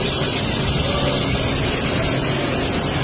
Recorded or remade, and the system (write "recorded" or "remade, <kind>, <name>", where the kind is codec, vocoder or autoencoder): recorded